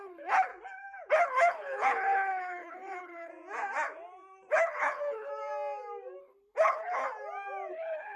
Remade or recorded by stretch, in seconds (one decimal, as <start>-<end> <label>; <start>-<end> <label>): 0.0-0.5 remade; 0.5-1.1 recorded; 1.1-3.3 remade; 3.3-4.5 recorded; 4.5-5.3 remade; 5.3-6.2 recorded; 6.2-7.0 remade; 7.0-7.7 recorded; 7.7-8.2 remade